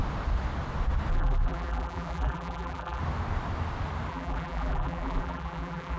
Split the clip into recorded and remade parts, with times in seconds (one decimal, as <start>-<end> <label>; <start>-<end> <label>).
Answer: 0.0-1.1 recorded; 1.1-3.0 remade; 3.0-4.1 recorded; 4.1-6.0 remade